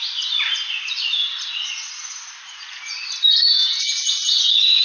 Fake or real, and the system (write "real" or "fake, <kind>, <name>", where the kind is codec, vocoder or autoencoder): real